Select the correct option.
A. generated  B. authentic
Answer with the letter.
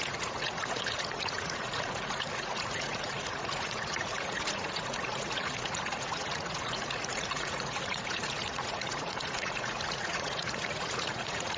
A